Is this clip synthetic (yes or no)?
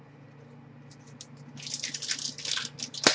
no